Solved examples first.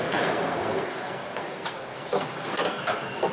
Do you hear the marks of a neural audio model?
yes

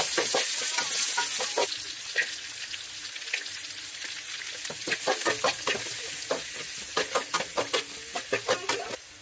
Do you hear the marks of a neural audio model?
no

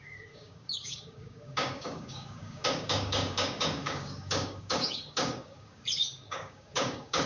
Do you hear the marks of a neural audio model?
yes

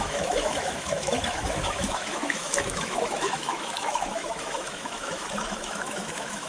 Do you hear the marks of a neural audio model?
yes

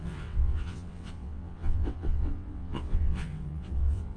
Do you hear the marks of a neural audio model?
yes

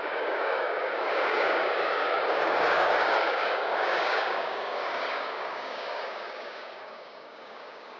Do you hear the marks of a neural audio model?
yes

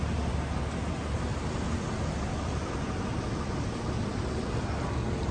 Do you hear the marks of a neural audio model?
no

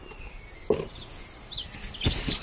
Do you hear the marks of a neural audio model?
no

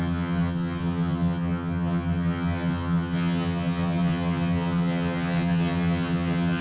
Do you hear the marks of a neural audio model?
yes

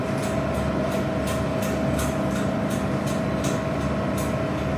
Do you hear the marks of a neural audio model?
no